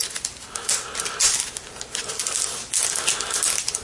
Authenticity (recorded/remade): recorded